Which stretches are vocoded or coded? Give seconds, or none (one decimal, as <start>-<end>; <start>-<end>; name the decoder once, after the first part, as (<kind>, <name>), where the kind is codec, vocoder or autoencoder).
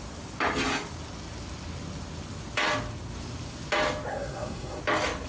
4.1-4.8 (codec, SNAC)